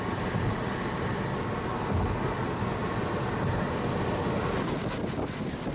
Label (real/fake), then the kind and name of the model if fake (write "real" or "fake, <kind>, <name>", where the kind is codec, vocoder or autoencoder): real